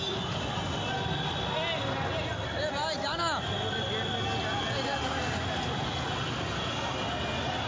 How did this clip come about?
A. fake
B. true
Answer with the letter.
B